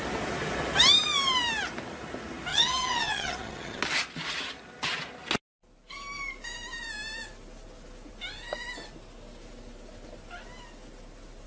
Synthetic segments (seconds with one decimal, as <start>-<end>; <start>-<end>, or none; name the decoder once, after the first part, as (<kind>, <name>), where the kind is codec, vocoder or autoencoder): 2.5-3.8 (vocoder, HiFi-GAN)